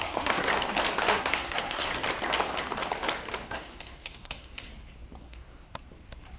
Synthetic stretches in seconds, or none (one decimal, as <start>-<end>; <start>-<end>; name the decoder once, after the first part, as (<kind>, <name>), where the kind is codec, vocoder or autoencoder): 0.0-0.5 (codec, SNAC); 1.1-1.9; 3.5-4.7; 5.2-5.7